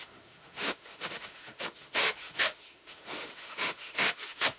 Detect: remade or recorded remade